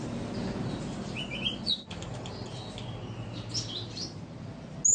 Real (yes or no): yes